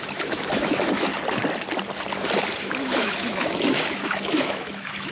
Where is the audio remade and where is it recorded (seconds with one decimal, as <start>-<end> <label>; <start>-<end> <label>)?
0.0-1.1 remade; 1.1-2.6 recorded; 2.6-5.1 remade